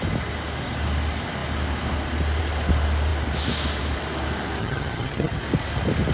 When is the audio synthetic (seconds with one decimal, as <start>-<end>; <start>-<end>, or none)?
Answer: 4.6-5.4